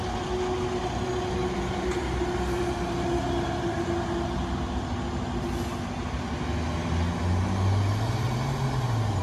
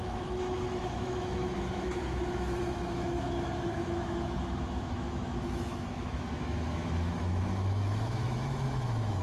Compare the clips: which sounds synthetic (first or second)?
second